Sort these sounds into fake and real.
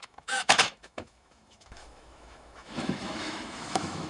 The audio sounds fake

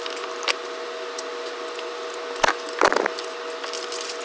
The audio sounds real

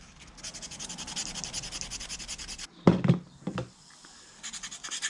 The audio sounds real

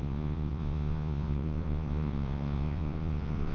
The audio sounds fake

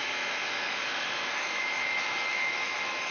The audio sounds fake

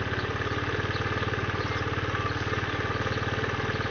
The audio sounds real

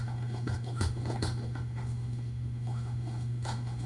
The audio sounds fake